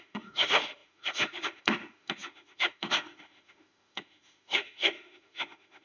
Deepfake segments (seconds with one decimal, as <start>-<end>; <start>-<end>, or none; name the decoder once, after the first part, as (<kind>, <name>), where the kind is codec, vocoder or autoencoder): 0.0-5.8 (autoencoder, DAC-VAE)